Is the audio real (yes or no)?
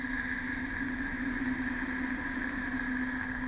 yes